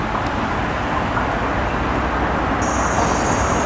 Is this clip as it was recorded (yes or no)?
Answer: yes